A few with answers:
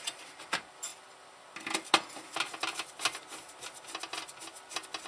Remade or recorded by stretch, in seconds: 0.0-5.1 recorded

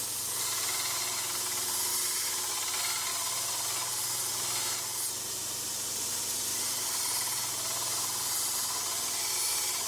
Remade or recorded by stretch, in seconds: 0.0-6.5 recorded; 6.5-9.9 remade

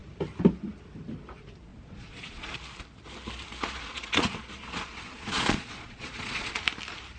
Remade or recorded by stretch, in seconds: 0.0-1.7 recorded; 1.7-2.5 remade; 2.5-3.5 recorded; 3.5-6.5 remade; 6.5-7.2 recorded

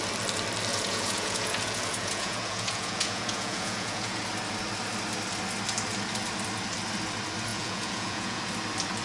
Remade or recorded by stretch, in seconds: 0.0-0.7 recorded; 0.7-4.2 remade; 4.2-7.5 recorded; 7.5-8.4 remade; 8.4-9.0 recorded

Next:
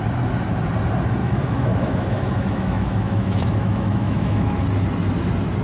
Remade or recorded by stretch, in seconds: 0.0-1.2 recorded; 1.2-4.6 remade; 4.6-5.6 recorded